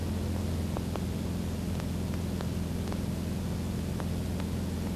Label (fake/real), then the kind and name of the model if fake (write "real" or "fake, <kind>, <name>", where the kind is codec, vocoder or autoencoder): real